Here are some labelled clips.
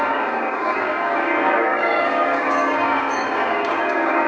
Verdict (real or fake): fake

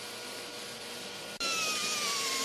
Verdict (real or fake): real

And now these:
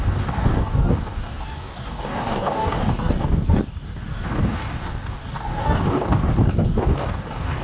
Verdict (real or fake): fake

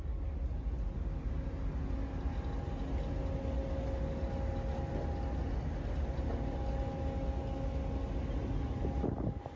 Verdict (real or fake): real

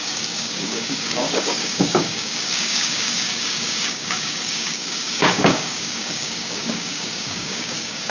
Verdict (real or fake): fake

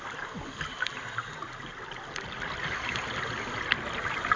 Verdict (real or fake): real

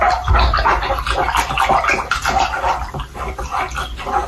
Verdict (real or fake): real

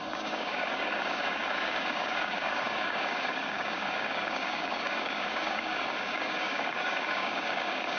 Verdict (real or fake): fake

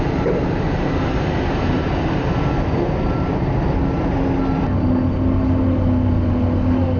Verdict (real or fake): real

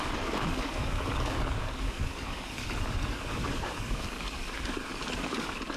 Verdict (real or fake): fake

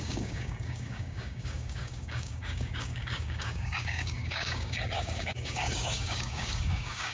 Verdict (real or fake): fake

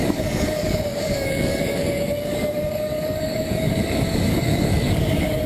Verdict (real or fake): fake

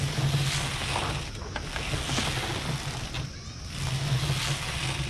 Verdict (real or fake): real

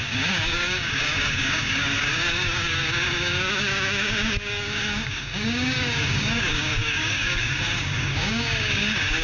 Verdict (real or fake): fake